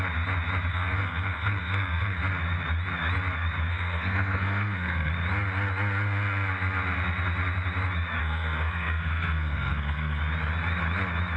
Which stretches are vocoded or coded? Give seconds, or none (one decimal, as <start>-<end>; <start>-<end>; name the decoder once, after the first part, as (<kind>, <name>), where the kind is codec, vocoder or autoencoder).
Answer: 0.7-2.2 (codec, SNAC); 3.7-5.1; 8.2-10.2